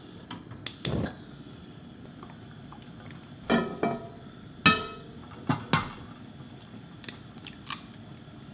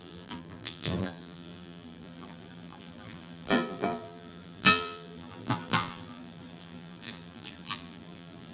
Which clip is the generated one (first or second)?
second